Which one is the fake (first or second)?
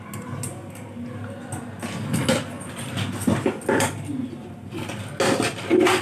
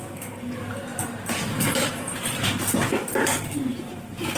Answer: second